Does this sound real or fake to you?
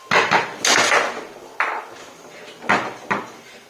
real